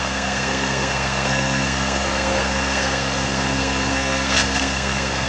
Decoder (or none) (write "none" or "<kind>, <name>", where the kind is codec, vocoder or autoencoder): codec, SNAC